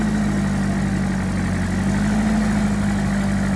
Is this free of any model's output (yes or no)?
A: yes